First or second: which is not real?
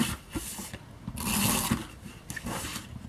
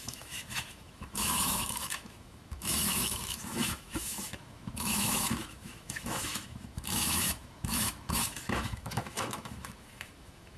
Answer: second